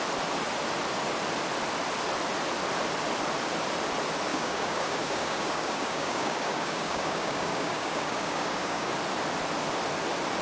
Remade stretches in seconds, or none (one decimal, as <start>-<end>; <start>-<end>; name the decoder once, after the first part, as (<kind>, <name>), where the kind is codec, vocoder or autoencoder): 4.3-8.9 (codec, DAC)